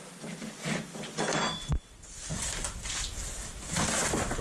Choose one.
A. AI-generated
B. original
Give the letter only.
B